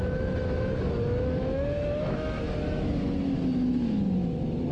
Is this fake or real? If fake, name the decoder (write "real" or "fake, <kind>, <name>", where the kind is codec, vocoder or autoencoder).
fake, autoencoder, DAC-VAE